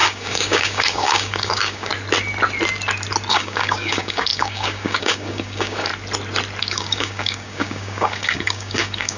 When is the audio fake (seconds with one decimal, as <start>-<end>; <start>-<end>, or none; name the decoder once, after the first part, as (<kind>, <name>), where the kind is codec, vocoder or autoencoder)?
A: 0.0-1.9 (codec, DAC); 3.3-5.9; 6.6-9.2

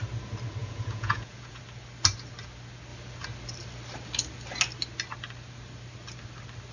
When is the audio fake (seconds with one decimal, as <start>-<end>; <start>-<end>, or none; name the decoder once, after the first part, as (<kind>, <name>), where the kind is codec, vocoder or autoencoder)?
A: 0.6-1.6 (vocoder, Vocos)

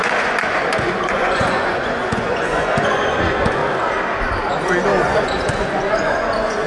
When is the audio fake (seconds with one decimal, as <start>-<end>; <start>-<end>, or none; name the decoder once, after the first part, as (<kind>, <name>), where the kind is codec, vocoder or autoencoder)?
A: 0.0-3.6 (vocoder, Vocos); 5.0-6.7

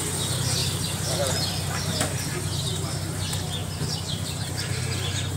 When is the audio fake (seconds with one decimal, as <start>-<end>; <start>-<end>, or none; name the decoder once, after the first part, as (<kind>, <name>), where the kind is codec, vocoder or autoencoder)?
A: 3.6-4.8 (vocoder, BigVGAN v2)

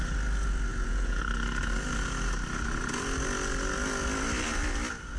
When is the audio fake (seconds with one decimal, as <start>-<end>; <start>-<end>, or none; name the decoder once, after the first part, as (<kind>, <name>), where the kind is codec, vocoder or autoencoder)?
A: 0.7-1.2 (vocoder, Vocos)

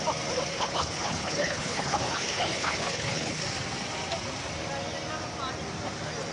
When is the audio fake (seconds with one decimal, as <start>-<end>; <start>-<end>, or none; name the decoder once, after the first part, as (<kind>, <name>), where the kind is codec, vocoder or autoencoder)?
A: 0.5-3.4 (codec, HILCodec)

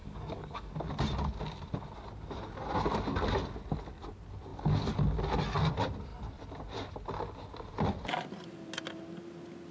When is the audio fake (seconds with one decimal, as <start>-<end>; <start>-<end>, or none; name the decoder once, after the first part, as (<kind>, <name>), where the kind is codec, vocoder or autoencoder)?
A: 0.0-0.8 (codec, DAC)

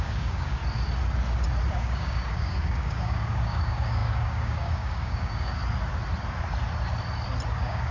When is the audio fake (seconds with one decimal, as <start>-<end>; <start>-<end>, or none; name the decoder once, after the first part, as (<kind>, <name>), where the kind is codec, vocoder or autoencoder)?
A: 0.0-0.6 (codec, DAC); 1.7-5.6; 7.5-7.9